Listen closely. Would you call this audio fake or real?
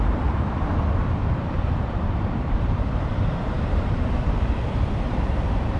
fake